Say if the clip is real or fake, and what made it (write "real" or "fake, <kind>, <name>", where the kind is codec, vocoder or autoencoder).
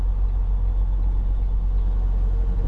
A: real